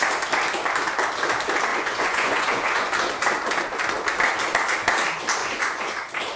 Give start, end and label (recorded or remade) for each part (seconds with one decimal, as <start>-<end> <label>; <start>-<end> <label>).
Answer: 0.0-1.7 recorded; 1.7-2.9 remade; 2.9-5.4 recorded; 5.4-5.9 remade; 5.9-6.4 recorded